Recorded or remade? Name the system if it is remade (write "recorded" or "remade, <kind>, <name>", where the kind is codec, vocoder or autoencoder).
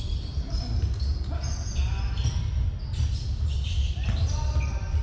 recorded